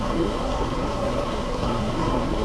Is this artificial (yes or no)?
yes